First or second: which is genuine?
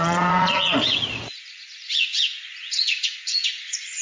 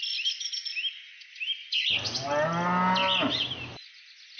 second